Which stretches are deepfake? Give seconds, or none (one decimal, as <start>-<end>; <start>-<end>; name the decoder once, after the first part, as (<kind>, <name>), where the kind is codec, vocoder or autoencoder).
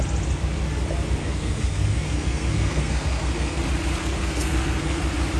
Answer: 1.2-3.6 (codec, SNAC); 4.0-5.0